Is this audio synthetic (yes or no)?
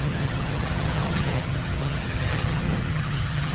yes